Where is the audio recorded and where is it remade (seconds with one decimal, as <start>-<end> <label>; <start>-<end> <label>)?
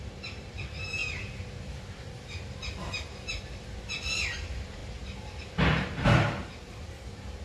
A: 0.0-7.4 remade